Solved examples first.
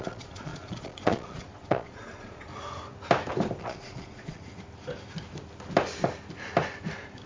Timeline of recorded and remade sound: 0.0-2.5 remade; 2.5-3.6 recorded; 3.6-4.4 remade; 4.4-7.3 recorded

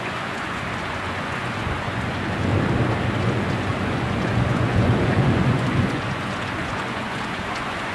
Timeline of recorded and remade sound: 0.0-2.5 remade; 2.5-3.2 recorded; 3.2-7.9 remade

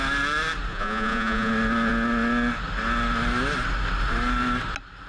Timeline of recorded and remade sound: 0.0-0.7 recorded; 0.7-1.5 remade; 1.5-5.1 recorded

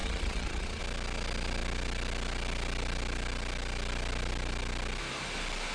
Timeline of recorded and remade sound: 0.0-0.8 remade; 0.8-5.7 recorded